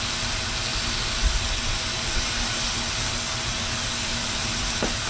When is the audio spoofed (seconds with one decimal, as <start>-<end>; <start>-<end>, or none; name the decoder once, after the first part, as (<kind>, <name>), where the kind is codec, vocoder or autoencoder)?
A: 4.1-4.6 (vocoder, BigVGAN v2)